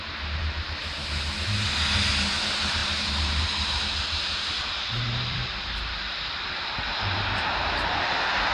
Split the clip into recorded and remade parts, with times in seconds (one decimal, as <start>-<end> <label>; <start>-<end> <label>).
0.0-0.4 remade; 0.4-2.1 recorded; 2.1-8.5 remade